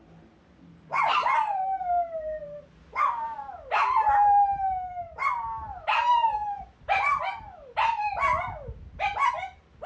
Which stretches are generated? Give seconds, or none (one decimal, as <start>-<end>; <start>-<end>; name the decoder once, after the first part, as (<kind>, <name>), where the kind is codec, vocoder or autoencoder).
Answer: 0.9-2.6 (vocoder, BigVGAN v2)